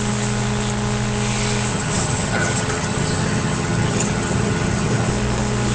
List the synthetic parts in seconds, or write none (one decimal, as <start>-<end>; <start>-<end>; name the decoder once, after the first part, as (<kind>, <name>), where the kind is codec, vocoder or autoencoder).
1.7-5.1 (vocoder, HiFi-GAN)